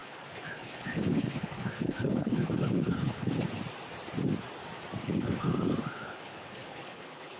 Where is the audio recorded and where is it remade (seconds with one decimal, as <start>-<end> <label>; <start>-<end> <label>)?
0.0-3.5 remade; 3.5-5.0 recorded; 5.0-7.4 remade